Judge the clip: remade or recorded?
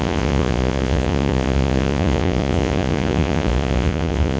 remade